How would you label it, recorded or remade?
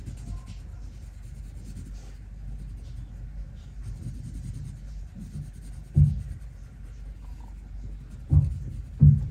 recorded